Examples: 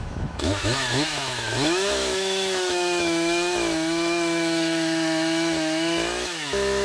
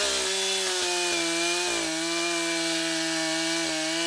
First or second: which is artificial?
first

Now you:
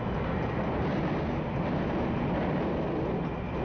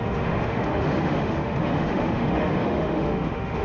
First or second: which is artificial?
second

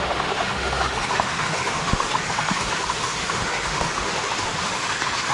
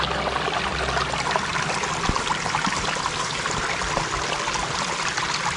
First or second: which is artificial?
first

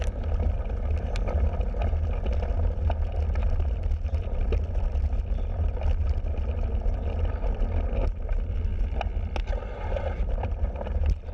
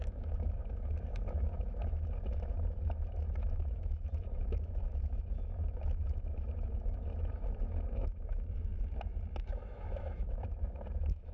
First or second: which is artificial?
second